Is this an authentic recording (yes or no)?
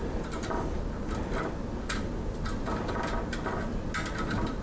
yes